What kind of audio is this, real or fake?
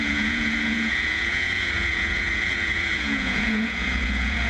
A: fake